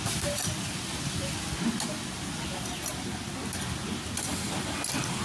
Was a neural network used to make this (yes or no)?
yes